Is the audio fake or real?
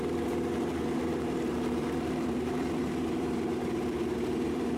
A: fake